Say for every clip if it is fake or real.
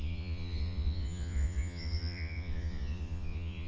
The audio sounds fake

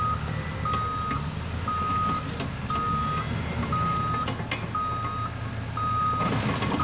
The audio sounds real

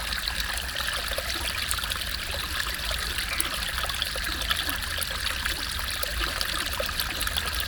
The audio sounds real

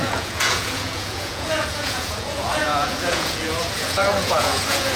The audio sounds fake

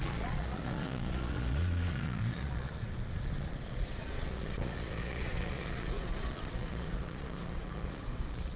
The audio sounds fake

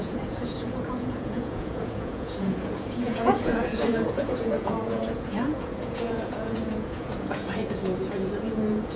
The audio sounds fake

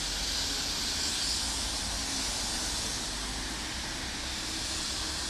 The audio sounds real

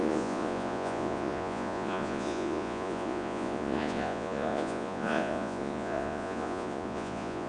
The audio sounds fake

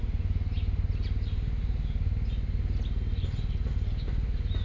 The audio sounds real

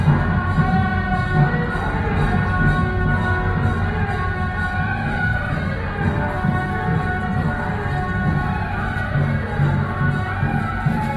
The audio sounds real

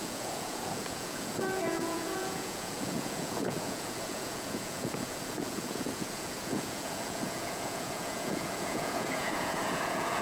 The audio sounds fake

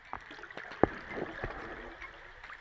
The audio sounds real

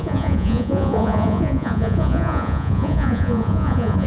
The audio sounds fake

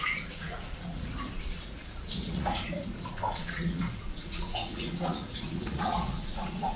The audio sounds fake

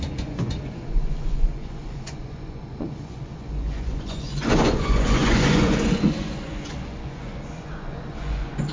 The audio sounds fake